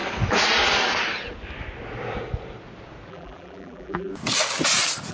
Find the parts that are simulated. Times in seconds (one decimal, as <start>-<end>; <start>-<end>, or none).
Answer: 3.1-4.1